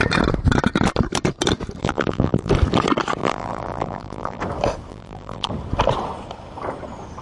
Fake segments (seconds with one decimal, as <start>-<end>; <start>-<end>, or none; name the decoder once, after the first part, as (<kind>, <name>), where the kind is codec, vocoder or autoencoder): 1.8-2.5 (vocoder, BigVGAN v2); 3.2-4.4; 4.9-5.5